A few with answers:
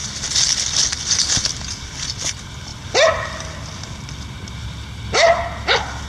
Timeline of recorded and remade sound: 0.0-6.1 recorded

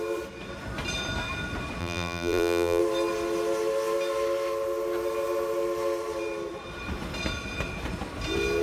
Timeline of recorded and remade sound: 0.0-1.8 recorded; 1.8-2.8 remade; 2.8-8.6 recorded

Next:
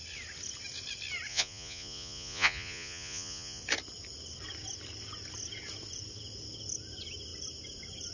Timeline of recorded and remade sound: 0.0-1.3 recorded; 1.3-3.6 remade; 3.6-8.1 recorded